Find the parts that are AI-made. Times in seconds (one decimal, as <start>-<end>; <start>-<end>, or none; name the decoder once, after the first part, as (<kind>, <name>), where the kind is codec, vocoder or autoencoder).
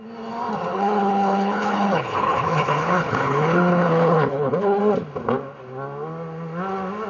0.7-4.8 (codec, HILCodec)